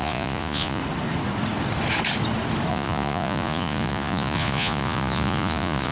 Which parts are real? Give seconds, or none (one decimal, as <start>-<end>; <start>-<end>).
0.8-2.7